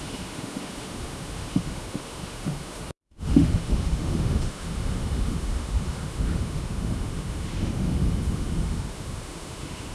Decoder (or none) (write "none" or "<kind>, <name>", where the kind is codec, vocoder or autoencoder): autoencoder, DAC-VAE